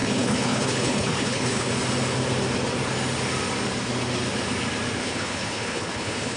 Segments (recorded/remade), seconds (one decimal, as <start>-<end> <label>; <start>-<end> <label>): 0.0-1.7 remade; 1.7-5.0 recorded; 5.0-6.4 remade